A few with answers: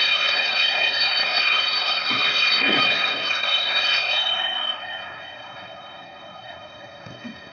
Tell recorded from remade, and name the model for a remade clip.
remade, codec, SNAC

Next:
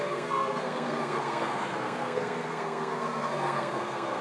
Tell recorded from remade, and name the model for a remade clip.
remade, codec, SNAC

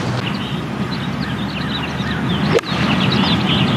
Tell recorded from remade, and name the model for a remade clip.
recorded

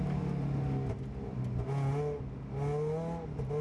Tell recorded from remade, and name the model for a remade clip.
recorded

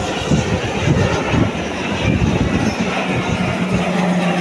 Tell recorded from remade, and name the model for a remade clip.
recorded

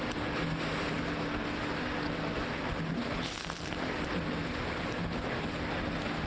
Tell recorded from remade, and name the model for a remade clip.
recorded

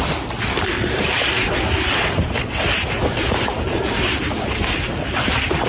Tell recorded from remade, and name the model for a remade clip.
recorded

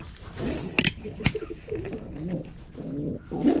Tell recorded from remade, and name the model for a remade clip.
recorded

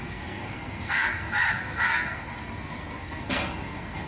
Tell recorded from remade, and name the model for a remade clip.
remade, codec, SNAC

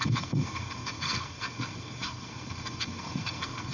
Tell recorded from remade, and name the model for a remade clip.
remade, codec, SNAC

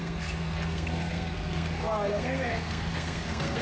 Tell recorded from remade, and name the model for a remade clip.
remade, codec, SNAC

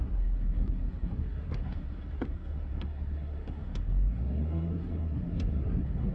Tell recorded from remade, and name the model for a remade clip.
remade, codec, SNAC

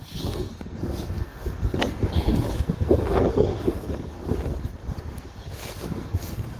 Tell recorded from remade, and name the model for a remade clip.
remade, codec, SNAC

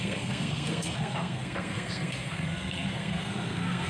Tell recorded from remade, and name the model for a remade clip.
remade, codec, SNAC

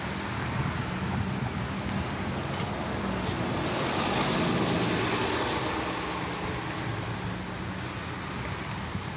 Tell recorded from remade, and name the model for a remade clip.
recorded